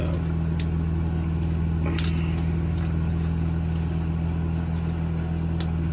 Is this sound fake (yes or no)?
no